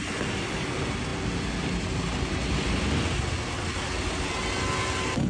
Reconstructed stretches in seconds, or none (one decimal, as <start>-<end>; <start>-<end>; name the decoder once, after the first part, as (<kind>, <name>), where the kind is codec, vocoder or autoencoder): none